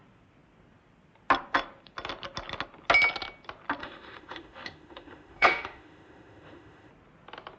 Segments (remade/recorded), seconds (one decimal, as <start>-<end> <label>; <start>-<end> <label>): 0.0-3.8 recorded; 3.8-6.9 remade; 6.9-7.6 recorded